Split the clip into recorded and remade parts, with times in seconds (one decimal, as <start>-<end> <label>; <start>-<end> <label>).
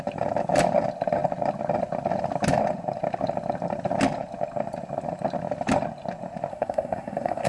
0.0-6.5 recorded; 6.5-7.5 remade